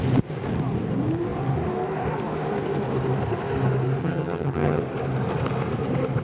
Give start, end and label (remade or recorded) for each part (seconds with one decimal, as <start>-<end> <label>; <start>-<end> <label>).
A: 0.0-4.0 recorded; 4.0-4.8 remade; 4.8-6.2 recorded